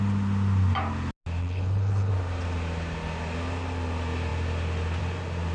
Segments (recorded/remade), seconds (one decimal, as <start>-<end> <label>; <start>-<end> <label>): 0.0-1.4 recorded; 1.4-2.1 remade; 2.1-5.5 recorded